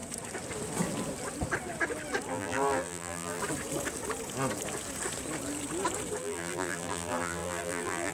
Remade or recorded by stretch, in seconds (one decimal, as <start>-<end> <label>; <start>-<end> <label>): 0.0-2.3 recorded; 2.3-3.4 remade; 3.4-6.2 recorded; 6.2-8.1 remade